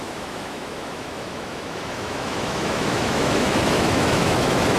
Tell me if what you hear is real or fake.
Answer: fake